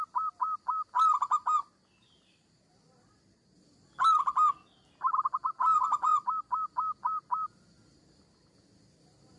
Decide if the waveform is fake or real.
real